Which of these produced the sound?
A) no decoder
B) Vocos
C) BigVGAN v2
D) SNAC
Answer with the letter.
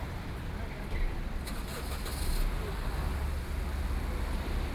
A